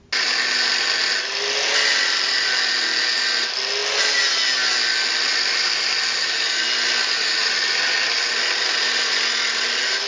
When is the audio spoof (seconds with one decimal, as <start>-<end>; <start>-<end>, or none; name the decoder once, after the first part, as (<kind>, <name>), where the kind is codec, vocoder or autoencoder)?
none